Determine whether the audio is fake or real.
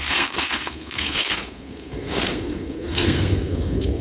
fake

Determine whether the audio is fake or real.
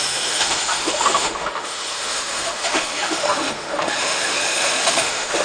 fake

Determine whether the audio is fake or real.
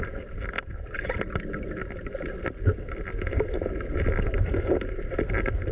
real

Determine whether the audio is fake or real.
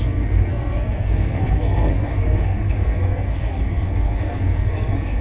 fake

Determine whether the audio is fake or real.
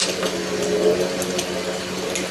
real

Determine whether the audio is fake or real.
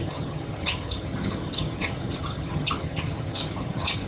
fake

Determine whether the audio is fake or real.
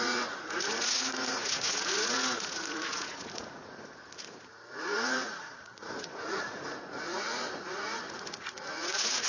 fake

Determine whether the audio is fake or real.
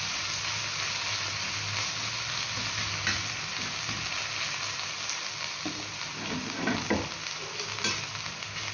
real